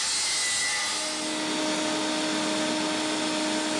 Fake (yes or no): no